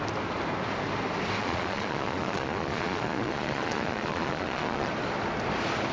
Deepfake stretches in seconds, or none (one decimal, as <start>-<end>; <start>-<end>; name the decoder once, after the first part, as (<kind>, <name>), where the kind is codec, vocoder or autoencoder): 1.4-4.9 (vocoder, Vocos)